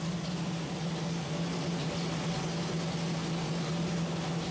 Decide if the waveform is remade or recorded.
recorded